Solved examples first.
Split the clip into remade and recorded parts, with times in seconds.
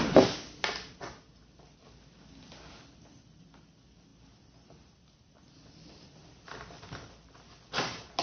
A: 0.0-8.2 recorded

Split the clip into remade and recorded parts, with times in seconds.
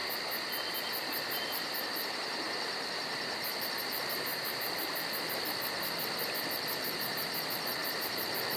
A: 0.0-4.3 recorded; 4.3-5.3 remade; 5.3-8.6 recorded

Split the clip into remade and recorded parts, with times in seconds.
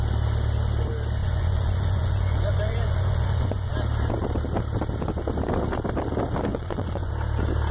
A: 0.0-1.2 recorded; 1.2-3.7 remade; 3.7-6.5 recorded; 6.5-7.1 remade; 7.1-7.7 recorded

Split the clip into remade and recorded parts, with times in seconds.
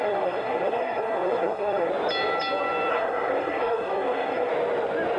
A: 0.0-1.9 remade; 1.9-2.9 recorded; 2.9-4.5 remade; 4.5-5.2 recorded